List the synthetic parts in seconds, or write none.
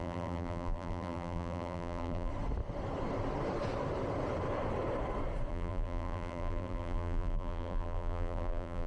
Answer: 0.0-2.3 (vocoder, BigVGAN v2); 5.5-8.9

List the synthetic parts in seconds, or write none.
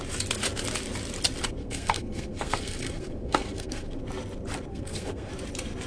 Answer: 1.6-4.0 (codec, SNAC); 4.7-5.3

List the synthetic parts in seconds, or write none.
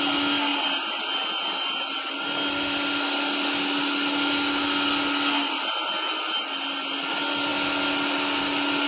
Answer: none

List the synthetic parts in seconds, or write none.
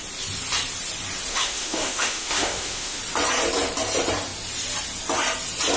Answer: 1.3-3.0 (autoencoder, DAC-VAE)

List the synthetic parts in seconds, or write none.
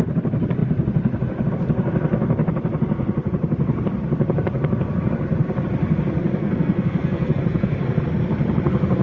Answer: 6.4-7.4 (codec, SNAC)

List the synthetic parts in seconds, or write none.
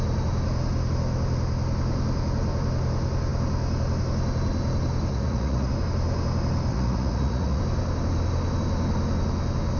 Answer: 5.1-5.7 (vocoder, Vocos); 6.7-7.6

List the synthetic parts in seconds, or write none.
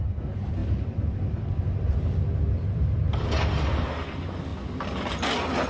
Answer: 0.6-3.2 (vocoder, BigVGAN v2)